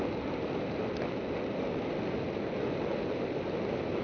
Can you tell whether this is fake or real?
real